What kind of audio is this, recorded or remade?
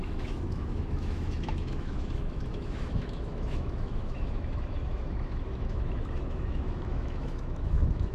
remade